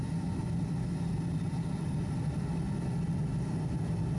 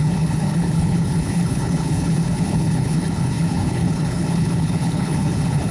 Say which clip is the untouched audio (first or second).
first